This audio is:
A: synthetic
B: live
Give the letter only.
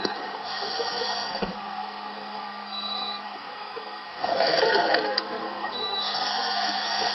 A